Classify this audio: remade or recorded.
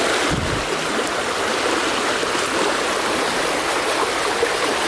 recorded